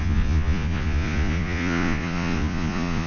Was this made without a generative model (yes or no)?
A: no